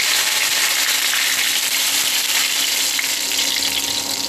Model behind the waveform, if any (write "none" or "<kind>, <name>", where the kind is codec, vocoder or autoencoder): none